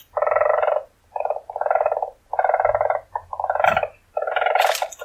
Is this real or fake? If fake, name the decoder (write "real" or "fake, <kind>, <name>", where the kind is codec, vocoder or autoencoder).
real